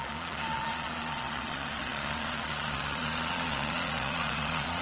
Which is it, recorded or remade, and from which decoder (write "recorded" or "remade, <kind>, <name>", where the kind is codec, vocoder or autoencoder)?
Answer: remade, vocoder, Vocos